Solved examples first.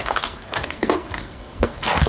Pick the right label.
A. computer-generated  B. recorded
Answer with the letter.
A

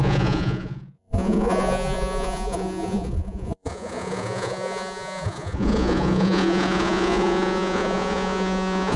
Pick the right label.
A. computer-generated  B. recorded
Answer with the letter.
A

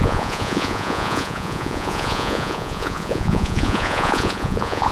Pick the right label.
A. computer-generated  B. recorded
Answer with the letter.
A